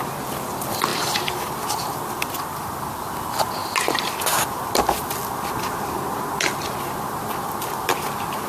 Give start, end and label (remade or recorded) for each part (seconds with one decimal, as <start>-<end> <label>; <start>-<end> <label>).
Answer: 0.0-0.9 recorded; 0.9-1.5 remade; 1.5-8.5 recorded